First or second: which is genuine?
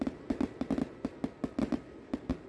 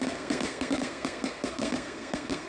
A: first